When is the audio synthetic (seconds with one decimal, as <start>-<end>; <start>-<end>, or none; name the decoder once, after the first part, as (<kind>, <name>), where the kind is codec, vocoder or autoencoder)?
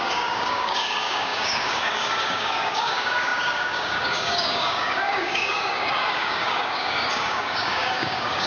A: 0.0-8.5 (codec, DAC)